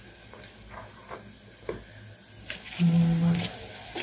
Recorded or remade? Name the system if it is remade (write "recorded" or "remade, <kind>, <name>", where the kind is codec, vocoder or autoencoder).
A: recorded